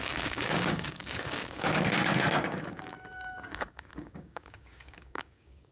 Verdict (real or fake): fake